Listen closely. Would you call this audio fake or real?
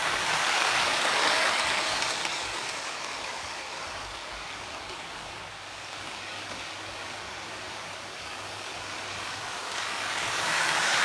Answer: fake